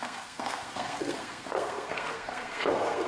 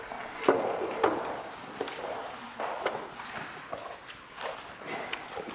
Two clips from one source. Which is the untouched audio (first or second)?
second